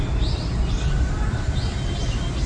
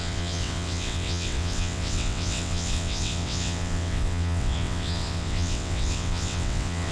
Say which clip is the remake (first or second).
second